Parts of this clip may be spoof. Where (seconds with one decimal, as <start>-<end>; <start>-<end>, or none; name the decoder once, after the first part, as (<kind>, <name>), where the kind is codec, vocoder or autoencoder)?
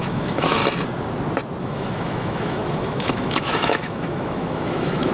0.0-0.6 (autoencoder, DAC-VAE); 1.6-5.1